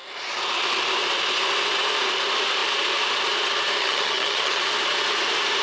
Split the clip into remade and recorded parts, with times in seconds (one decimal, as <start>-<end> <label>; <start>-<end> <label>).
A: 0.0-3.8 recorded; 3.8-4.6 remade; 4.6-5.6 recorded